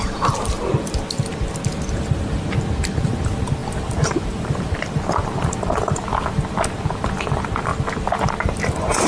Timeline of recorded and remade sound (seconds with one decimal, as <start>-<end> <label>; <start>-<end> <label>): 0.0-3.6 recorded; 3.6-4.9 remade; 4.9-9.1 recorded